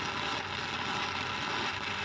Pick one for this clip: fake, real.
real